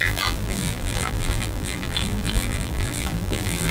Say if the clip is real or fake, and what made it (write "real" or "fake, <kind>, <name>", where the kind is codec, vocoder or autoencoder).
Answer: fake, vocoder, BigVGAN v2